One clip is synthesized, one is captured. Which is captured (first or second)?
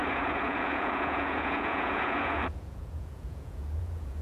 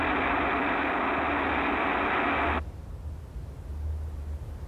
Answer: second